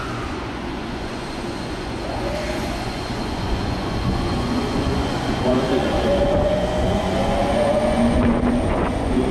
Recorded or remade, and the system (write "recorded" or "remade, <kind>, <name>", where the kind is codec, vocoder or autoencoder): remade, vocoder, Vocos